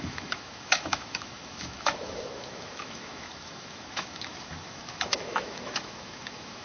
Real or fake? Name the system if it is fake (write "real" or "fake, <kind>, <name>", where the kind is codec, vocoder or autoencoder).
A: fake, autoencoder, DAC-VAE